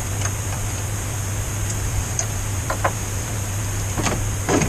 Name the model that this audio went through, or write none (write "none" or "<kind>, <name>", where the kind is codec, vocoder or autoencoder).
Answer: vocoder, BigVGAN v2